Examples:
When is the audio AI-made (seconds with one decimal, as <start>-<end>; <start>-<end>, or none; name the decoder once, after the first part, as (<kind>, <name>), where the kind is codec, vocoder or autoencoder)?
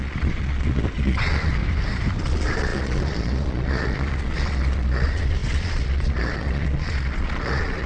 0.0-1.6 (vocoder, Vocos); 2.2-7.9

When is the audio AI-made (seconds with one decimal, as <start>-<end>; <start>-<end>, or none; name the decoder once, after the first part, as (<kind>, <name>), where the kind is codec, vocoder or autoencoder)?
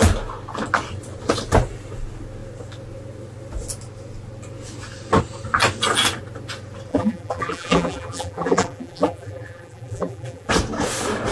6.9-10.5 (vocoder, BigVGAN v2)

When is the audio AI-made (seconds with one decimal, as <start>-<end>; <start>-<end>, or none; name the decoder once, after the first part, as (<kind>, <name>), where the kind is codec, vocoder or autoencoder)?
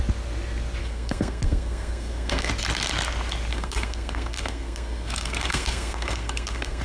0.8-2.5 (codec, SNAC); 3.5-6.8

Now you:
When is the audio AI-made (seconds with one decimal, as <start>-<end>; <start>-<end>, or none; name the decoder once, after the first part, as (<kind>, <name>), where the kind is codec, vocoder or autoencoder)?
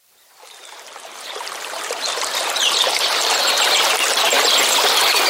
0.0-3.2 (vocoder, BigVGAN v2)